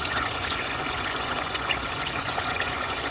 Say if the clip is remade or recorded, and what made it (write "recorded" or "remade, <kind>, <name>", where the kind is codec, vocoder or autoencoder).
remade, vocoder, Vocos